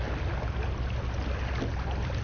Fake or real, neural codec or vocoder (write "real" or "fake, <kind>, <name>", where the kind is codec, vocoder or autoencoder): real